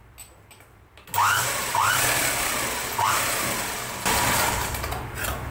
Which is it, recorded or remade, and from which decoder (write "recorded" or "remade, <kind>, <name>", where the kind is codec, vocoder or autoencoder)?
recorded